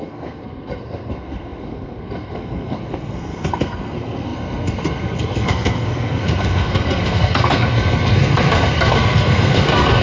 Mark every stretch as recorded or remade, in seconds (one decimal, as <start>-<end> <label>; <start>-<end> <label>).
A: 0.0-10.0 remade